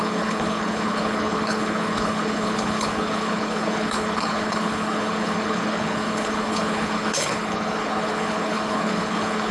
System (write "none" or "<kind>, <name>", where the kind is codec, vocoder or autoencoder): codec, HILCodec